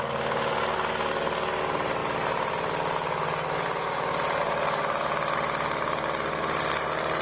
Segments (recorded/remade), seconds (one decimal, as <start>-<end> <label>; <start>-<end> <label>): 0.0-7.2 recorded